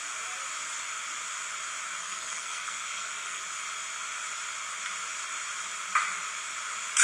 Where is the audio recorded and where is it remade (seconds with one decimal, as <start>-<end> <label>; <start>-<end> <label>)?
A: 0.0-2.0 recorded; 2.0-3.4 remade; 3.4-7.0 recorded